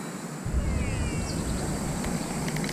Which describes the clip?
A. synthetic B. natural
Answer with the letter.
B